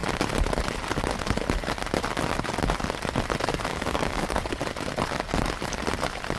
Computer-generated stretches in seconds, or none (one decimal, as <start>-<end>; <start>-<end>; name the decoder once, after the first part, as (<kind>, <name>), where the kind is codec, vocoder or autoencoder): 3.7-4.4 (codec, DAC)